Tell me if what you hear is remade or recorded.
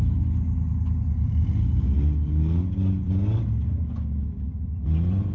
recorded